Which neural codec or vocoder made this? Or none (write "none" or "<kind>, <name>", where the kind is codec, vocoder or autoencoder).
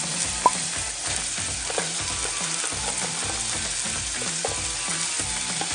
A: none